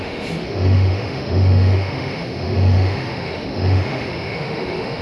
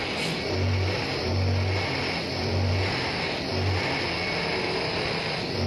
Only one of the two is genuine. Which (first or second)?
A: second